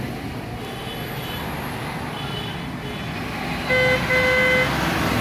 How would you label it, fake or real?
real